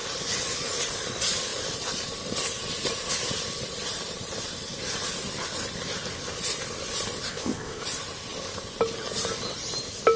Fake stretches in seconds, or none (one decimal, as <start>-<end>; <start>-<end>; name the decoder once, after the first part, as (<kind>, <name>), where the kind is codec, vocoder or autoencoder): 7.3-7.8 (codec, ZipCodec)